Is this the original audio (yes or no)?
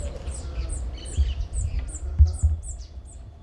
yes